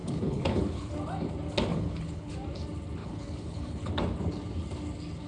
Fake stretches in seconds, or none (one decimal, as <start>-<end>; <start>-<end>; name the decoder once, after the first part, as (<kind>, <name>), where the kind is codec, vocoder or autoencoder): 0.0-0.9 (codec, HILCodec); 1.7-2.3; 3.0-3.9